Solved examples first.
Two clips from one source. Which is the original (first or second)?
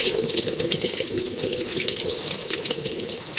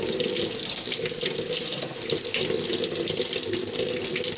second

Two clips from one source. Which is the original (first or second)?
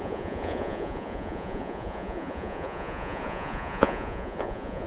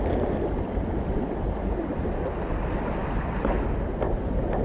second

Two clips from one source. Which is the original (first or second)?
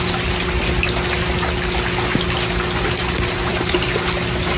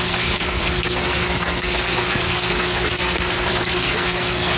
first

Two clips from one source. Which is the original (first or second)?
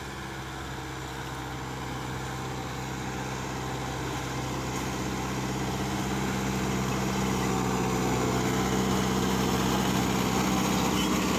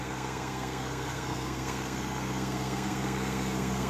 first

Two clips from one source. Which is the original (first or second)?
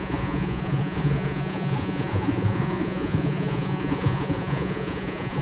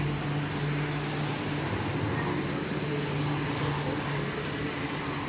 second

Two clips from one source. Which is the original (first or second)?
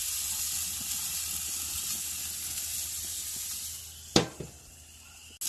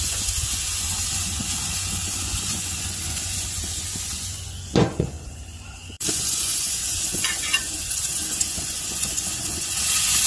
first